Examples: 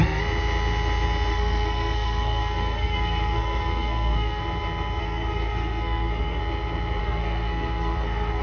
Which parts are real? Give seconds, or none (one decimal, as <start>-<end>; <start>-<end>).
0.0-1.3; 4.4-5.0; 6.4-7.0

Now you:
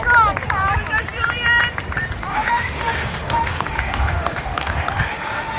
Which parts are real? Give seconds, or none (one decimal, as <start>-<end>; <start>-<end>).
0.0-2.3

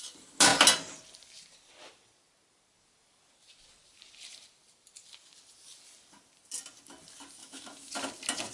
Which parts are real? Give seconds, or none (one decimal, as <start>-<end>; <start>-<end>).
0.0-7.4; 7.9-8.5